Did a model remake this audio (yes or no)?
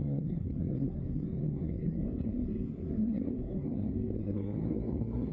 yes